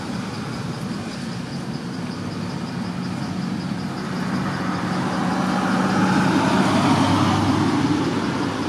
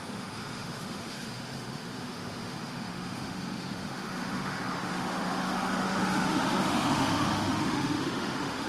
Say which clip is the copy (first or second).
second